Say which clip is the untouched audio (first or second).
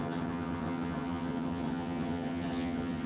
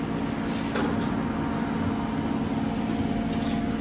second